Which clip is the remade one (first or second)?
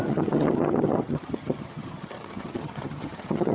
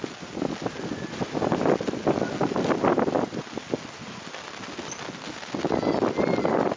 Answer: first